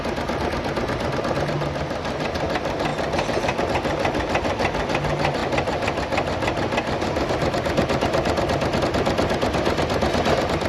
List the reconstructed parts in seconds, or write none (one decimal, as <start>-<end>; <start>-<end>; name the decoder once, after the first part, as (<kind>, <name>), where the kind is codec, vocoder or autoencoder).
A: none